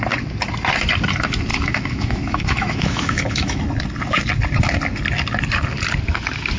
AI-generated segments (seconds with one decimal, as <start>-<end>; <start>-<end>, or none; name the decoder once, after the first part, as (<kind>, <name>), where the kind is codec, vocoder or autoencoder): 1.5-3.6 (autoencoder, DAC-VAE)